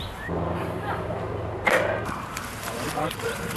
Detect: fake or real fake